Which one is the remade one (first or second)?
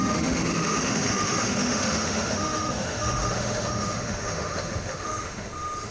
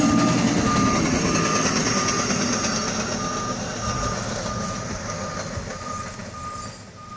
first